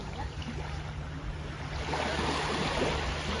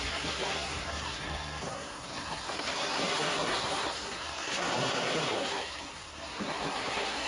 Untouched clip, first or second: first